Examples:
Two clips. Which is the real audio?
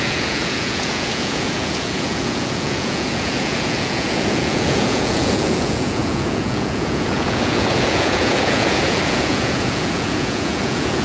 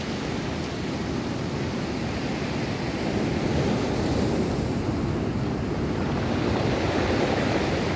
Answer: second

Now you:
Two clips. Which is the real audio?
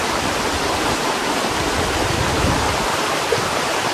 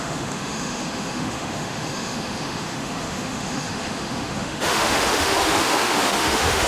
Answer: first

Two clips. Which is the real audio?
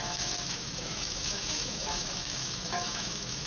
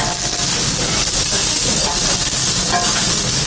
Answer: second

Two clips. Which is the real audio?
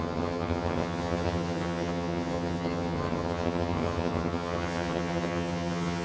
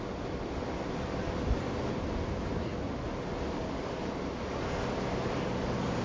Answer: second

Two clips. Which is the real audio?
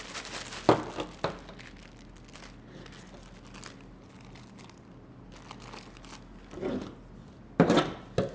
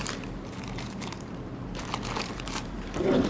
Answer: first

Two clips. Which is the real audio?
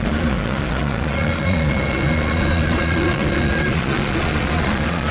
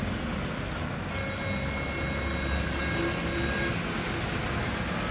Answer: second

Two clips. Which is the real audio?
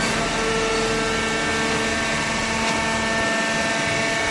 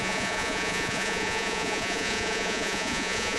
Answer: first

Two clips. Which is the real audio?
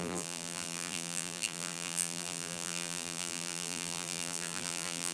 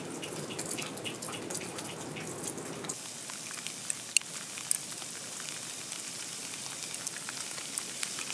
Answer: second